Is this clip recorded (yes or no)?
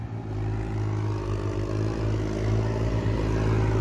yes